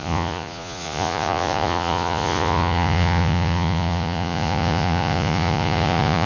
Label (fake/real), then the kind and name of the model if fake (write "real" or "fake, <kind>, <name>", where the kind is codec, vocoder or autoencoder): fake, vocoder, Vocos